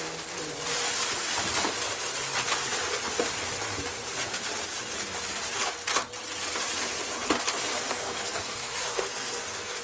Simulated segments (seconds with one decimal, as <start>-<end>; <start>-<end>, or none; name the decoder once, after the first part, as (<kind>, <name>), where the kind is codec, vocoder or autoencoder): 7.7-9.8 (codec, SNAC)